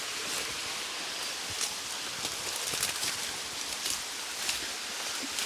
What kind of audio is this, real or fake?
real